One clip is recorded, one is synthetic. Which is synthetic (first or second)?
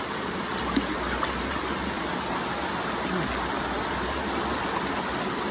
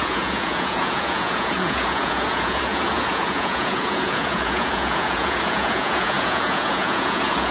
second